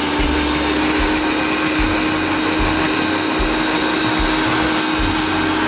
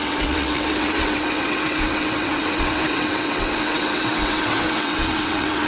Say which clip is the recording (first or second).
first